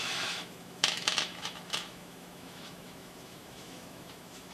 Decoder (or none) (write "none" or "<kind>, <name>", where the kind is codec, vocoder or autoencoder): autoencoder, DAC-VAE